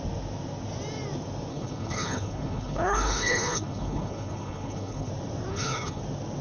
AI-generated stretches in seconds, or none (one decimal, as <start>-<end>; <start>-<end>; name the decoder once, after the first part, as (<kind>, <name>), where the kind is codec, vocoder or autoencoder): 1.5-5.1 (codec, HILCodec); 5.5-6.0